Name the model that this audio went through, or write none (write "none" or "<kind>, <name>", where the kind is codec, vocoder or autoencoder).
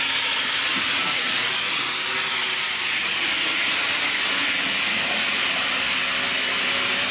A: none